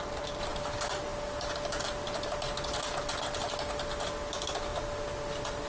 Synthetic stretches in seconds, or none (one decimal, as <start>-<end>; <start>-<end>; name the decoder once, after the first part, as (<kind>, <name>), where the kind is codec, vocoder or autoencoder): none